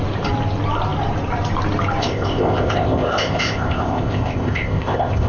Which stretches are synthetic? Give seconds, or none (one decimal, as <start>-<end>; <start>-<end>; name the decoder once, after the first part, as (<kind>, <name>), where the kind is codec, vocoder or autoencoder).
2.0-5.3 (codec, ZipCodec)